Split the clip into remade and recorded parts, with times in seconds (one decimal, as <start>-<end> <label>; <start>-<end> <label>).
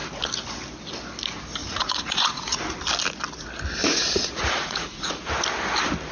0.0-1.6 recorded; 1.6-2.6 remade; 2.6-3.8 recorded; 3.8-5.2 remade; 5.2-6.1 recorded